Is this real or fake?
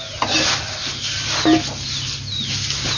real